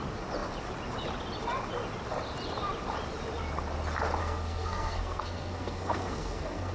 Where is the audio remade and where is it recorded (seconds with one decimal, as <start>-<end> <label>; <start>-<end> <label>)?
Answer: 0.0-4.2 recorded; 4.2-6.7 remade